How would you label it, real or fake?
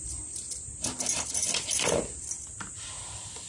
real